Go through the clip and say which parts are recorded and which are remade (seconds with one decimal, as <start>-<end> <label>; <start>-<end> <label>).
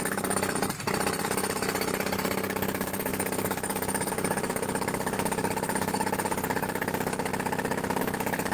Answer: 0.0-0.6 remade; 0.6-1.2 recorded; 1.2-7.3 remade; 7.3-8.0 recorded; 8.0-8.5 remade